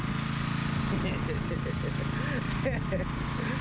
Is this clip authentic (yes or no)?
yes